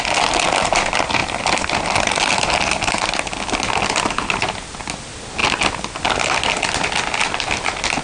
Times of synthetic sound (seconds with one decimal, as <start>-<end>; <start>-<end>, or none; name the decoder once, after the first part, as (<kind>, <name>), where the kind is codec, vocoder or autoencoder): none